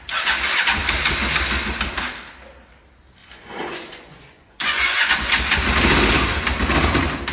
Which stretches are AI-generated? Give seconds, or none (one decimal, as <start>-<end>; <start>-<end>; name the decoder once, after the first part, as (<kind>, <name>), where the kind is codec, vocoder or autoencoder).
3.2-5.3 (vocoder, Vocos)